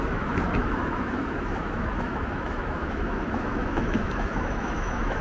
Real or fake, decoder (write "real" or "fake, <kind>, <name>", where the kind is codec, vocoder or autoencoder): fake, autoencoder, DAC-VAE